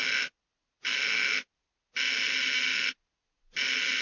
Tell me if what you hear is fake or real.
real